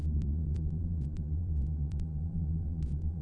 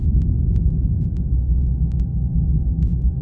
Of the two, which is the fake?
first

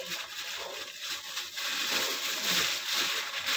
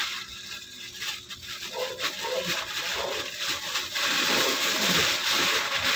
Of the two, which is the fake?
second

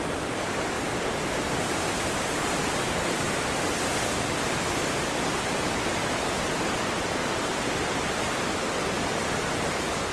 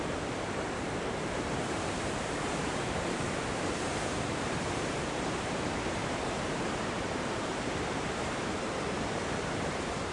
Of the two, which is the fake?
second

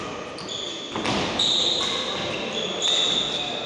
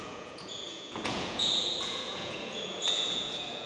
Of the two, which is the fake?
second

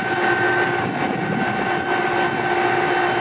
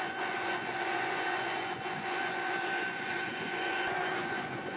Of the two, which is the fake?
second